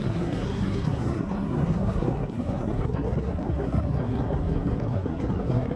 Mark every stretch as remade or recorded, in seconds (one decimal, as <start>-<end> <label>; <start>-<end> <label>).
0.0-5.8 remade

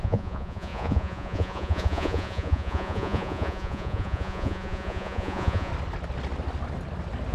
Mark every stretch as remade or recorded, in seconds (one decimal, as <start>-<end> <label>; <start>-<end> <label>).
0.0-5.7 remade; 5.7-7.3 recorded

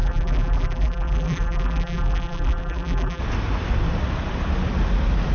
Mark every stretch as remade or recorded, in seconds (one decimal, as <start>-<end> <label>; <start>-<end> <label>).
0.0-3.2 remade; 3.2-5.3 recorded

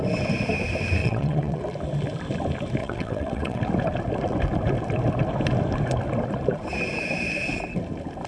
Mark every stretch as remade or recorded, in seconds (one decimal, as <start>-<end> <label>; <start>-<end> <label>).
0.0-1.0 recorded; 1.0-1.6 remade; 1.6-2.8 recorded; 2.8-3.6 remade; 3.6-8.3 recorded

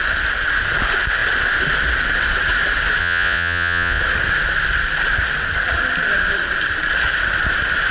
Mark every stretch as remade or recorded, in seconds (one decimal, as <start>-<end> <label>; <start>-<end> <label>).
0.0-3.0 recorded; 3.0-4.0 remade; 4.0-7.9 recorded